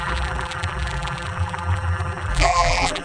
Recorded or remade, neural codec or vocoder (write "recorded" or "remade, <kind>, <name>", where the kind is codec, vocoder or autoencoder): remade, vocoder, BigVGAN v2